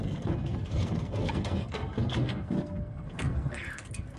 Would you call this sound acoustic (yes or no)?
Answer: no